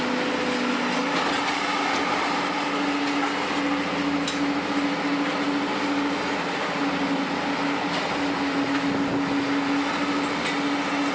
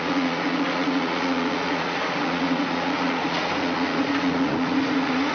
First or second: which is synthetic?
second